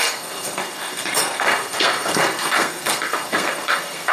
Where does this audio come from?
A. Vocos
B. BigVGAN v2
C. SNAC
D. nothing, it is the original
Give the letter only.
C